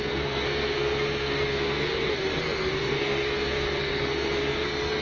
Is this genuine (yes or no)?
no